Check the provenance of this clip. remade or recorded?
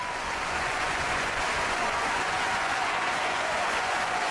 remade